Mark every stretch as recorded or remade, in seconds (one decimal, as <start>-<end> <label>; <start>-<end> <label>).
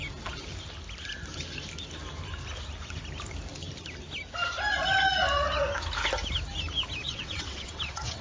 0.0-7.0 recorded; 7.0-8.2 remade